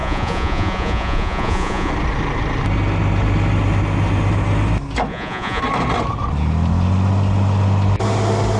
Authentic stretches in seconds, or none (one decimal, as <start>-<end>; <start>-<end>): 1.9-5.1; 5.6-8.6

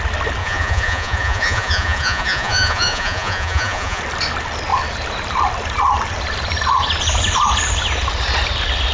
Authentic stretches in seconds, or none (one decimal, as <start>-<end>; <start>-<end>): 0.0-0.4; 4.0-8.9

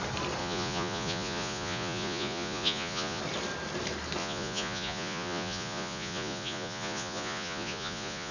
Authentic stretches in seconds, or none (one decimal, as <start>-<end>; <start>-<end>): 0.0-0.4; 3.2-4.2

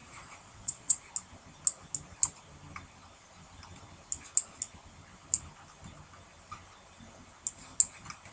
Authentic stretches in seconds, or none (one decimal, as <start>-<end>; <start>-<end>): 1.0-8.3

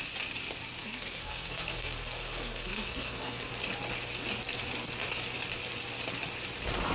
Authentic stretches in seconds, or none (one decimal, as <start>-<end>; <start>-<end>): 0.0-0.8; 3.5-6.9

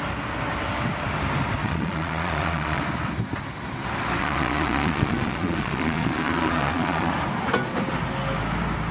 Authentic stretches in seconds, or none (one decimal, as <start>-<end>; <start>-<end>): 0.0-1.6; 2.8-4.2; 7.1-8.9

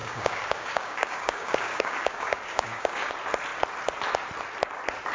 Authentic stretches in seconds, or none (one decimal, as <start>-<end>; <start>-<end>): 3.1-5.1

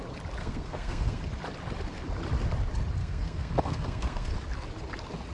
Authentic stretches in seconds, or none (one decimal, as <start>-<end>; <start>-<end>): 0.0-0.4; 1.2-3.0; 4.3-5.3